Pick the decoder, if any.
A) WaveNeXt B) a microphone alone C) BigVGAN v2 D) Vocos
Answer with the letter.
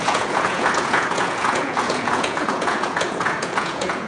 D